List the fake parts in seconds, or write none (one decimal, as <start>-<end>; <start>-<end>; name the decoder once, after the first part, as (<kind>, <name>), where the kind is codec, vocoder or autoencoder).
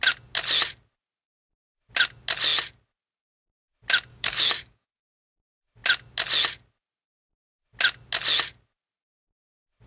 4.1-5.3 (codec, DAC)